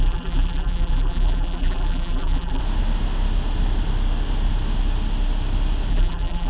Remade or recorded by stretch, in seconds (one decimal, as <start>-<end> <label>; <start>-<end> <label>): 0.0-2.6 remade; 2.6-5.9 recorded; 5.9-6.5 remade